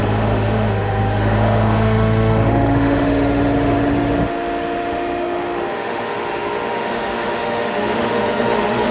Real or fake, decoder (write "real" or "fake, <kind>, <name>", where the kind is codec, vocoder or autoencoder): fake, autoencoder, DAC-VAE